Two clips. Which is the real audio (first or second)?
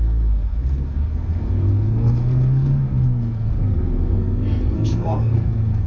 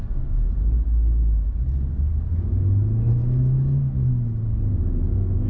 second